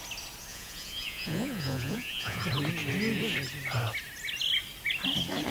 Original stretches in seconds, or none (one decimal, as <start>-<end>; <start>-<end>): 0.0-0.5; 2.4-5.5